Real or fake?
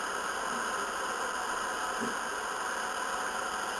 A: real